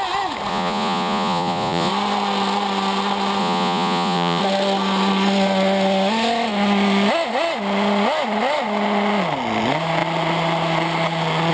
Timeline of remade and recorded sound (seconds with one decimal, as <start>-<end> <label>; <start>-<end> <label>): 0.0-0.5 recorded; 0.5-1.9 remade; 1.9-3.4 recorded; 3.4-4.4 remade; 4.4-11.5 recorded

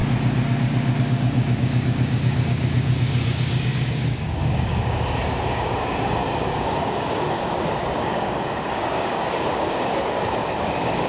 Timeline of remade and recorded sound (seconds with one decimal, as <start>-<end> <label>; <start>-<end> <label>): 0.0-1.0 recorded; 1.0-11.1 remade

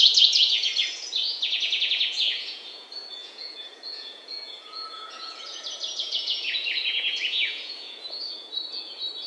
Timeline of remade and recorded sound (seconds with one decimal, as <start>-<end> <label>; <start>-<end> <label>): 0.0-9.3 remade

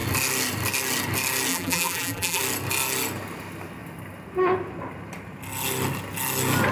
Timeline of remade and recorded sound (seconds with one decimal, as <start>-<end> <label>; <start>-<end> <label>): 0.0-1.5 recorded; 1.5-2.4 remade; 2.4-6.7 recorded